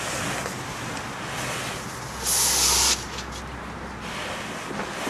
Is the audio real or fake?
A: real